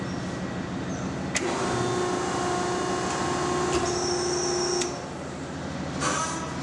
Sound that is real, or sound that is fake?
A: real